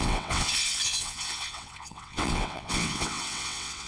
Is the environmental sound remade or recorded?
remade